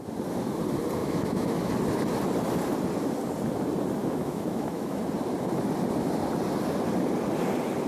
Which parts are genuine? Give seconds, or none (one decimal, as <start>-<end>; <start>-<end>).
0.0-1.0; 1.7-4.0; 5.0-7.9